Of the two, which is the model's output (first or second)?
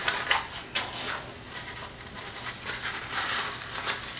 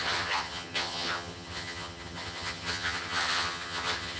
second